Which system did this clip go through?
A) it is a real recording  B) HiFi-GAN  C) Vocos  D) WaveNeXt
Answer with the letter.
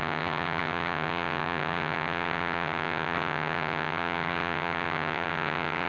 B